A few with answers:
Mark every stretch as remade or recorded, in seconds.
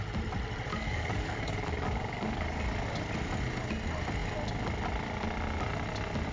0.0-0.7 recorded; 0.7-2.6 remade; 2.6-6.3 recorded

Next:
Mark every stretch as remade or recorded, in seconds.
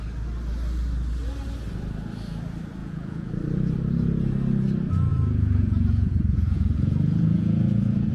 0.0-2.8 recorded; 2.8-3.3 remade; 3.3-5.1 recorded; 5.1-8.1 remade